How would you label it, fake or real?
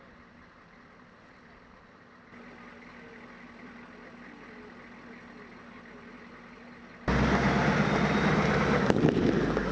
real